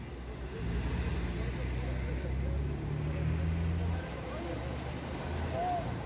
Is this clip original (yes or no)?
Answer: yes